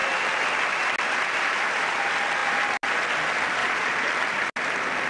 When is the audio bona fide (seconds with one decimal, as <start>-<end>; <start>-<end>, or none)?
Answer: 0.0-3.6; 4.1-5.1